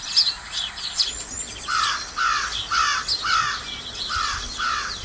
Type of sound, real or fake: real